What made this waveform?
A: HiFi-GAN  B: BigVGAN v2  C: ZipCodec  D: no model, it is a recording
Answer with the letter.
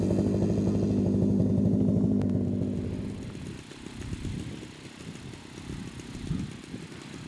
D